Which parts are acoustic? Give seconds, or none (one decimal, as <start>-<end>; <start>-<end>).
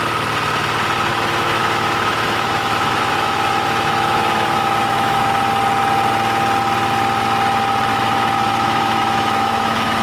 0.0-1.1; 5.3-7.9